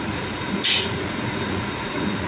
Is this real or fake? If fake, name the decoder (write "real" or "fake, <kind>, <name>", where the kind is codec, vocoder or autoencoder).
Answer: fake, vocoder, Vocos